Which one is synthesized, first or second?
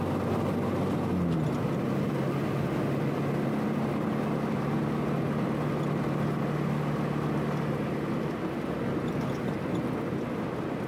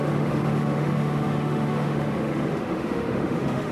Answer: second